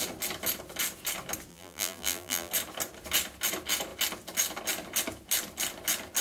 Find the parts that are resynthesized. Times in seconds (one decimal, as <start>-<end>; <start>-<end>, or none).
1.5-2.5